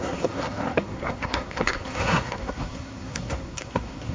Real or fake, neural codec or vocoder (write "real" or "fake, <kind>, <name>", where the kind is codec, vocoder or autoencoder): fake, codec, SNAC